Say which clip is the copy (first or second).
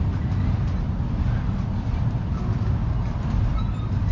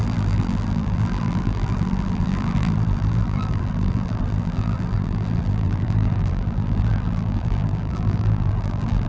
second